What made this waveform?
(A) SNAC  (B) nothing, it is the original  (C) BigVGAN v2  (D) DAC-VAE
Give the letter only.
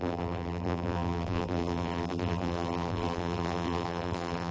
C